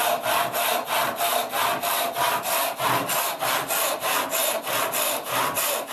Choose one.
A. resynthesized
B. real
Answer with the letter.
B